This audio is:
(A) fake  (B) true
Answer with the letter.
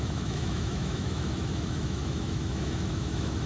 A